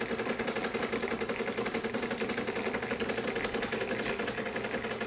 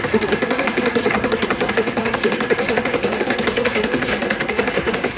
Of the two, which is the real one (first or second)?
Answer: first